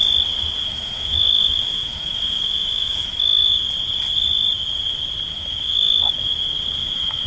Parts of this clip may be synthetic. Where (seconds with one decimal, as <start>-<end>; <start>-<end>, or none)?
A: 0.6-3.7; 5.3-6.3; 6.8-7.3